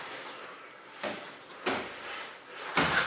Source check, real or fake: real